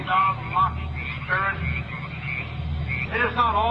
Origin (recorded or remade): recorded